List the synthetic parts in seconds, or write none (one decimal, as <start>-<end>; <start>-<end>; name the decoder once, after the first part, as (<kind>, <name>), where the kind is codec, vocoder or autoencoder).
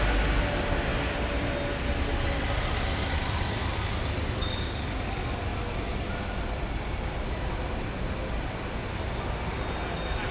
none